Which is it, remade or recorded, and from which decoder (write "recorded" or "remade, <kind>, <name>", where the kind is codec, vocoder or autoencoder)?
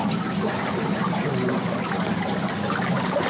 recorded